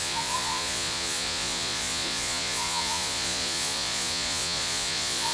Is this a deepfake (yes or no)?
yes